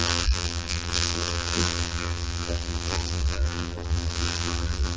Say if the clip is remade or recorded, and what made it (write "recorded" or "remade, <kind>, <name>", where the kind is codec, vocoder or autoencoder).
remade, vocoder, BigVGAN v2